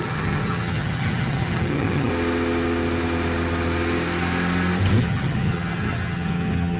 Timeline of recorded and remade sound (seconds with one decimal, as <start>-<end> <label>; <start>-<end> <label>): 0.0-2.1 remade; 2.1-5.0 recorded; 5.0-6.8 remade